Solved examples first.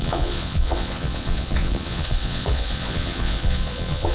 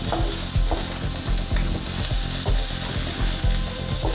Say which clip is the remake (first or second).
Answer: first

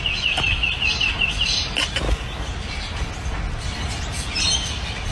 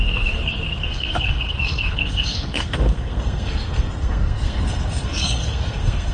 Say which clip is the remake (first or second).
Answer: second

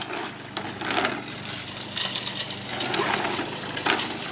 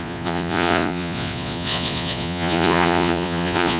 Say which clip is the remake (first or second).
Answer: second